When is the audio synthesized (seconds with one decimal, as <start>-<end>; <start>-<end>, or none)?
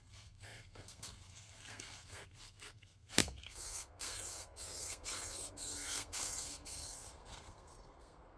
0.0-8.4